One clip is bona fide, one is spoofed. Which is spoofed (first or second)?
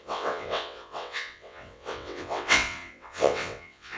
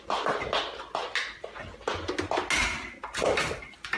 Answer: first